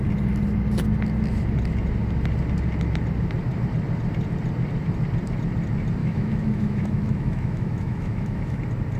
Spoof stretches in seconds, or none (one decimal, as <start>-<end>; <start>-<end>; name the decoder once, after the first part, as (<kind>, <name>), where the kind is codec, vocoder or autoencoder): 6.0-8.6 (autoencoder, DAC-VAE)